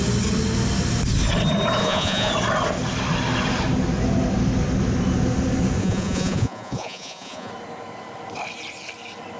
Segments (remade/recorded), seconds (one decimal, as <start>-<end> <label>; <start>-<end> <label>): 0.0-1.8 recorded; 1.8-2.3 remade; 2.3-5.8 recorded; 5.8-7.5 remade; 7.5-9.4 recorded